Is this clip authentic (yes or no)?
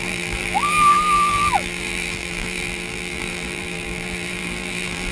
no